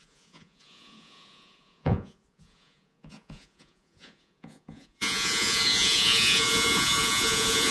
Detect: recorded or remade remade